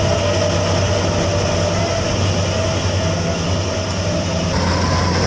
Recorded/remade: recorded